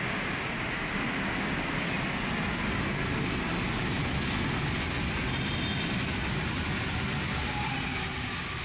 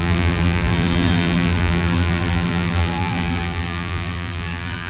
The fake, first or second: second